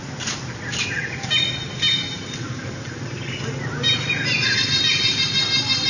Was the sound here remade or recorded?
recorded